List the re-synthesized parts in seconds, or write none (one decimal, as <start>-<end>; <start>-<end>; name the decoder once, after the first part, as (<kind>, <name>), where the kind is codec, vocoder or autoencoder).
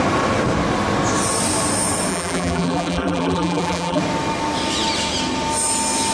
2.1-4.0 (vocoder, BigVGAN v2)